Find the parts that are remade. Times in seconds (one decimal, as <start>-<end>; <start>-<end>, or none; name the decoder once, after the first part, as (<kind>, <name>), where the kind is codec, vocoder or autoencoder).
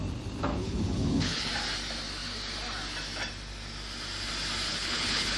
0.5-1.5 (codec, HILCodec); 4.7-5.4